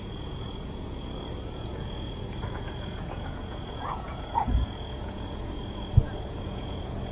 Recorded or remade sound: remade